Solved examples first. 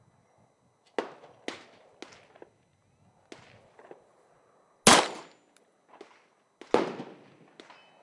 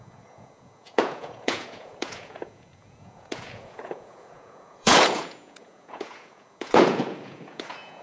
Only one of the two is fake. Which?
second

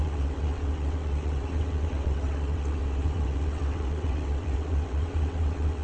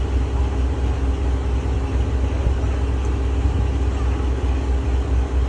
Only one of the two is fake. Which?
first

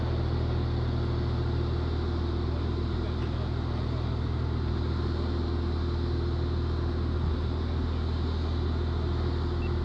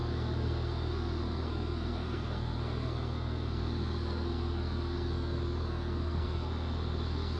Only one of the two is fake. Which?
second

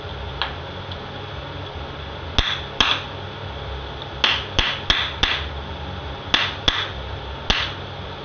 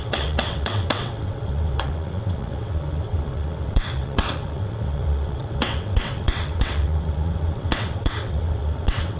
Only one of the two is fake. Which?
second